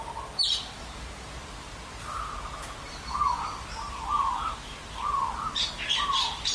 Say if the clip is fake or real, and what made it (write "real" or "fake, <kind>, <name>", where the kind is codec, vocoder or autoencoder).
fake, vocoder, BigVGAN v2